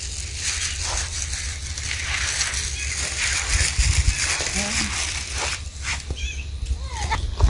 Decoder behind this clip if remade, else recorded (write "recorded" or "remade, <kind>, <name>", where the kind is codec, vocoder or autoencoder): recorded